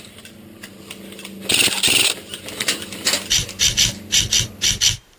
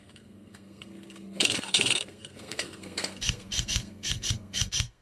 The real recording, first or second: first